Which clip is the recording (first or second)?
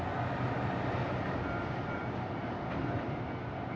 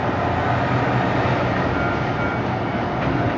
second